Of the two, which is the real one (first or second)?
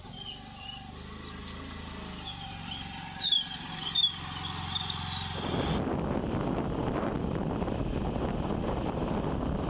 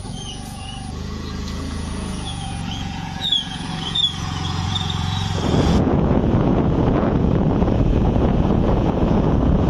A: first